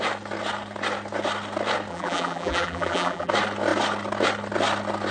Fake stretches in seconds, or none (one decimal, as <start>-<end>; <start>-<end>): 1.9-3.3